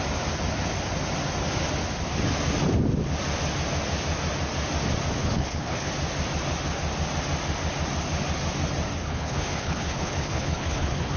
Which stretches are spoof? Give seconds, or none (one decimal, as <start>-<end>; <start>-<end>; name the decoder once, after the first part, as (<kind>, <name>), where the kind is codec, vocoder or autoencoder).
5.2-5.9 (codec, HILCodec); 9.0-11.2